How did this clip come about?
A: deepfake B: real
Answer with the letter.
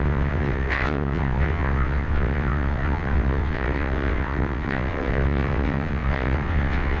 A